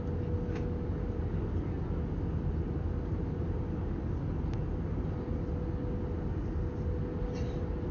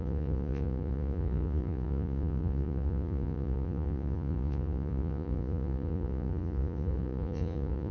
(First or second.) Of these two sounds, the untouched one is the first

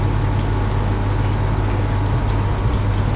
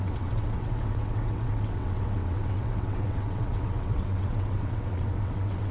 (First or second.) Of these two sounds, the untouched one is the first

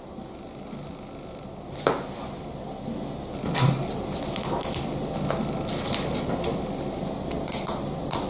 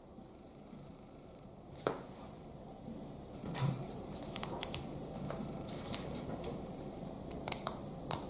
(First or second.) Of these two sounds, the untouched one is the first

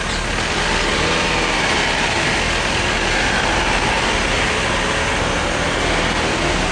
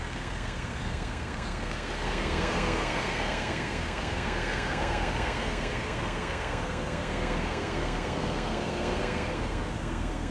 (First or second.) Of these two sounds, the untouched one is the first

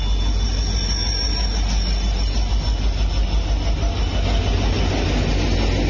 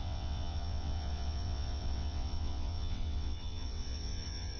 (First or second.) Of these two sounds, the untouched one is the first